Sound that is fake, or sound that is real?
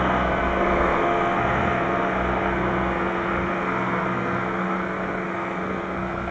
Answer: fake